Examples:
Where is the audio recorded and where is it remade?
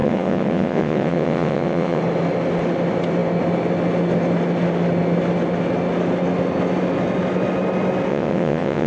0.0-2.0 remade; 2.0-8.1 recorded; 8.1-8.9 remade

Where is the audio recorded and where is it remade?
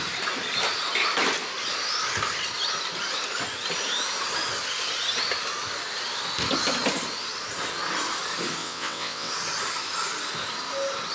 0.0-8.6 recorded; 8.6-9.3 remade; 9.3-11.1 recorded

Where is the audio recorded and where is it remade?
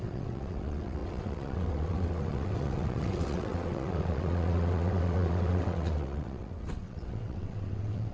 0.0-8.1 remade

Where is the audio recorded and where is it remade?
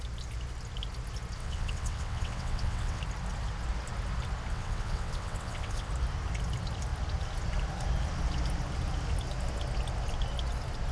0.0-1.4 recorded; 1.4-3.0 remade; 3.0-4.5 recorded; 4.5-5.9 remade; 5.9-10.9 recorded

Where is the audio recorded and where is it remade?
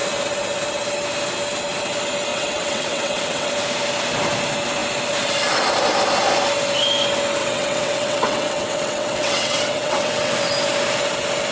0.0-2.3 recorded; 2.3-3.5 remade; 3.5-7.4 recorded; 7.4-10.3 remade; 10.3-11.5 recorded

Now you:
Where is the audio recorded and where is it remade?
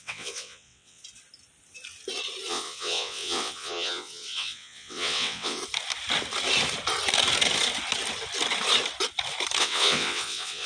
0.0-1.0 remade; 1.0-2.5 recorded; 2.5-5.6 remade; 5.6-9.6 recorded; 9.6-10.7 remade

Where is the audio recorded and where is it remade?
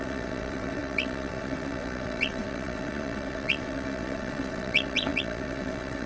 0.0-6.1 remade